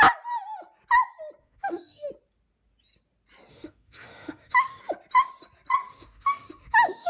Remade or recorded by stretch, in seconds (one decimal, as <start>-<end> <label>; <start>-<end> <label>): 0.0-1.4 recorded; 1.4-2.1 remade; 2.1-3.5 recorded; 3.5-4.8 remade; 4.8-5.9 recorded; 5.9-7.1 remade